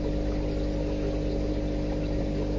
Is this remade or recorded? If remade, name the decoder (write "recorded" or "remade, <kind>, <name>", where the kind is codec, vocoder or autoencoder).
recorded